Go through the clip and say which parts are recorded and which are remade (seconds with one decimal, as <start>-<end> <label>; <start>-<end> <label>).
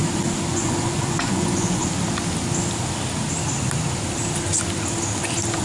0.0-0.5 recorded; 0.5-1.8 remade; 1.8-5.6 recorded